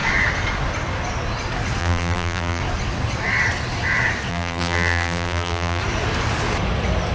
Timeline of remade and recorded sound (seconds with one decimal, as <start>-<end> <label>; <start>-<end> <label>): 0.0-1.8 recorded; 1.8-2.6 remade; 2.6-4.3 recorded; 4.3-5.8 remade; 5.8-7.1 recorded